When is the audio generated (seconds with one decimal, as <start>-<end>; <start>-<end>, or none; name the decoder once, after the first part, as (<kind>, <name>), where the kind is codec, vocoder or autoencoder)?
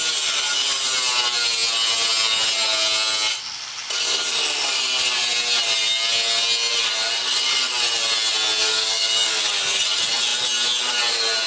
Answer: 8.6-9.4 (codec, DAC)